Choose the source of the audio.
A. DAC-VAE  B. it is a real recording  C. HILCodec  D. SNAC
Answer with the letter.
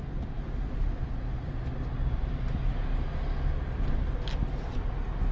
B